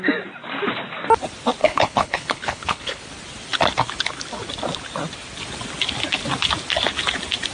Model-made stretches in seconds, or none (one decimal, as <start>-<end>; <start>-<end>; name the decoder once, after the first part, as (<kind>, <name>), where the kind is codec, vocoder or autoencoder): 1.6-3.0 (codec, HILCodec)